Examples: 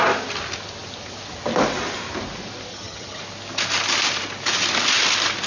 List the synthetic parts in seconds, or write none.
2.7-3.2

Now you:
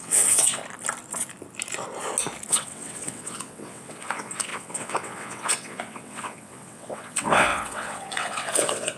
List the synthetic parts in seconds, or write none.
0.0-0.6; 2.5-9.0